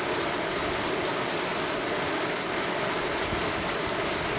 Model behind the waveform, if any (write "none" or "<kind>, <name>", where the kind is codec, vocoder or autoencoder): none